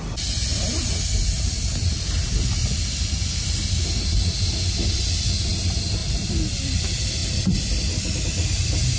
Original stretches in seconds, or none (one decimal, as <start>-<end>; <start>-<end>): 0.0-6.0; 6.8-7.2; 7.7-9.0